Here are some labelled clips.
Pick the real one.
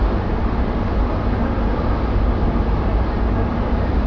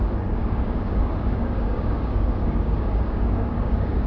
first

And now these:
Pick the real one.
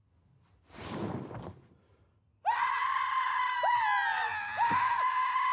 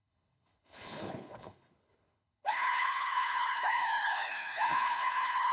first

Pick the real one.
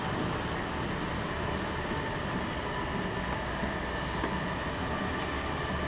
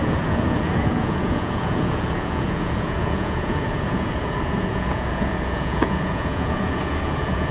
first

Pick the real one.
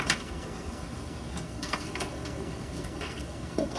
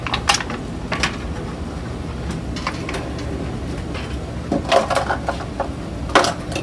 second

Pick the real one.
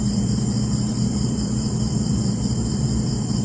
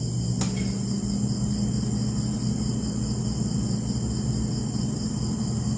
second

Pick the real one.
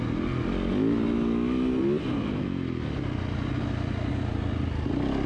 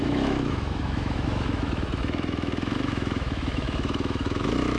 first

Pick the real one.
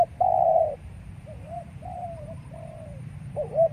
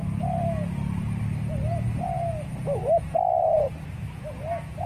second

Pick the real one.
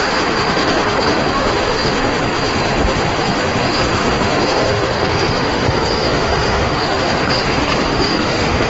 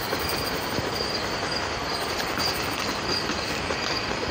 second